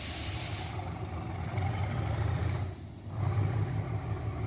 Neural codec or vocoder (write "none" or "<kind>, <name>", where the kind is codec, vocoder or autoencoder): none